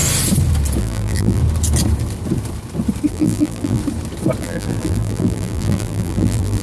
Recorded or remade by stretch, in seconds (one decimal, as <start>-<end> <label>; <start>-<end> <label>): 0.0-0.8 recorded; 0.8-1.4 remade; 1.4-3.1 recorded; 3.1-3.8 remade; 3.8-4.4 recorded; 4.4-6.6 remade